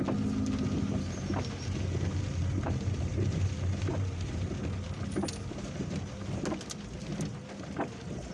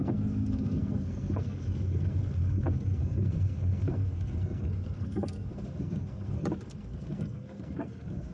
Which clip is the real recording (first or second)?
first